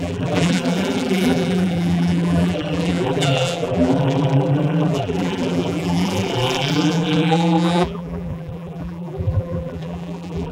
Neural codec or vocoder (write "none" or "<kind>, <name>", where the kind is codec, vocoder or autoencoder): vocoder, BigVGAN v2